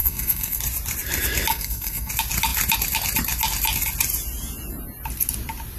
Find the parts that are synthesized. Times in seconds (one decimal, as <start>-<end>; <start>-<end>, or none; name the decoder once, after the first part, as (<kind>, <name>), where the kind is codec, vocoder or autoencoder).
0.0-0.6 (codec, SNAC); 1.5-2.1